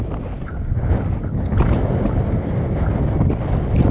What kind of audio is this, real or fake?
real